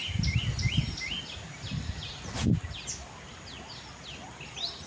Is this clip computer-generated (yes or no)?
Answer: no